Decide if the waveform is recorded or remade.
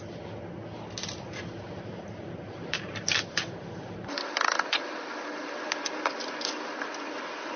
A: recorded